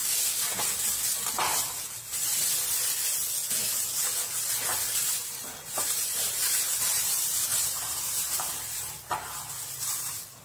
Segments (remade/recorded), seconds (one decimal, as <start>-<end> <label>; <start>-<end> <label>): 0.0-5.2 recorded; 5.2-7.1 remade; 7.1-7.5 recorded; 7.5-8.6 remade; 8.6-10.4 recorded